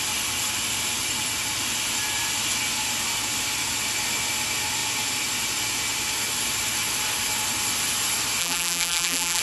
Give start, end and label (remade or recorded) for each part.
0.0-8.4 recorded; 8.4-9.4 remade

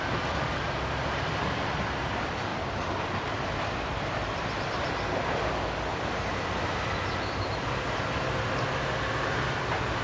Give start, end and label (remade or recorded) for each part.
0.0-10.0 recorded

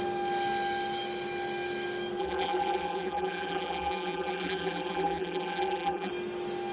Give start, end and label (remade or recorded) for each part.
0.0-2.2 recorded; 2.2-6.1 remade; 6.1-6.7 recorded

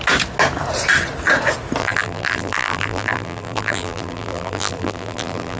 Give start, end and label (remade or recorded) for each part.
0.0-1.8 recorded; 1.8-5.6 remade

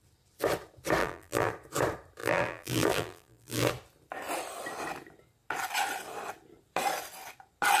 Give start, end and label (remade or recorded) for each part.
0.0-1.0 recorded; 1.0-1.5 remade; 1.5-2.2 recorded; 2.2-3.7 remade; 3.7-7.8 recorded